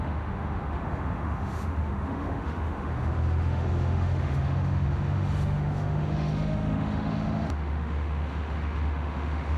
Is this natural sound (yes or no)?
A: no